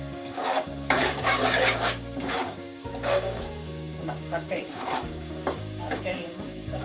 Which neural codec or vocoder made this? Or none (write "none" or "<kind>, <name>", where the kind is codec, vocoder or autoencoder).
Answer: codec, DAC